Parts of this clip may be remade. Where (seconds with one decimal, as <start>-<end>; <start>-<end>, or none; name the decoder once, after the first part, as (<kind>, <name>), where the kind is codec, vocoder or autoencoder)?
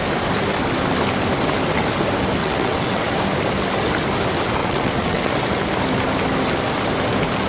2.4-3.1 (vocoder, WaveNeXt); 4.6-5.3